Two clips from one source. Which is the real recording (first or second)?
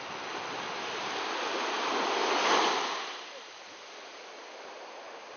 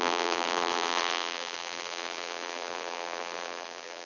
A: first